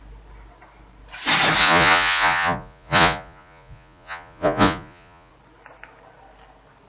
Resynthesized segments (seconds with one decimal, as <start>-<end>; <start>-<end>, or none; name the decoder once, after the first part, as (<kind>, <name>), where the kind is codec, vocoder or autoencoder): 1.6-5.3 (vocoder, Vocos)